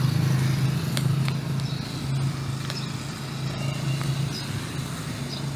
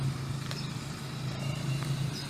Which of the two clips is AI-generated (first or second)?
second